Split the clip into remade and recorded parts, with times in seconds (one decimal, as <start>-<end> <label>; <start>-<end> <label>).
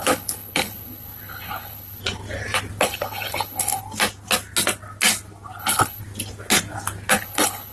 0.0-2.0 remade; 2.0-2.8 recorded; 2.8-3.8 remade; 3.8-5.6 recorded; 5.6-6.0 remade; 6.0-7.1 recorded; 7.1-7.7 remade